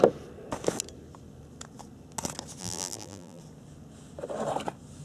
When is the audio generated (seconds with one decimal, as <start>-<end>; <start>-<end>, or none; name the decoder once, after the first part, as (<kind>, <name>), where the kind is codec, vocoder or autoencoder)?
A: 2.6-3.4 (vocoder, BigVGAN v2)